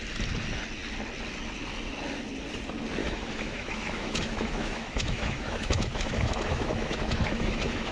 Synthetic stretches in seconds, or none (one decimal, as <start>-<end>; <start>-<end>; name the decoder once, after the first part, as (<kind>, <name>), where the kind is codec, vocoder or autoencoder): 3.0-7.9 (autoencoder, DAC-VAE)